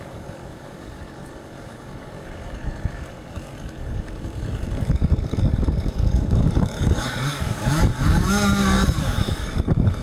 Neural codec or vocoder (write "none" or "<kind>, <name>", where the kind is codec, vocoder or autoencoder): codec, DAC